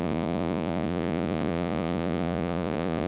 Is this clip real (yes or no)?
no